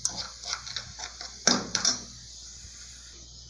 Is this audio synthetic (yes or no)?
no